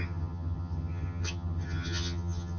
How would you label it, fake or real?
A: fake